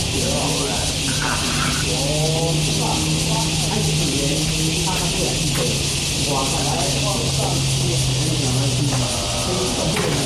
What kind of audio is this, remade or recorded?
recorded